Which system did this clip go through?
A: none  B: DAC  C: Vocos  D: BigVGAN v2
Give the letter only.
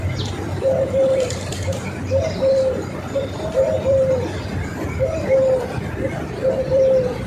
D